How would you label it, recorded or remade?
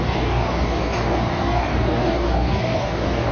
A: remade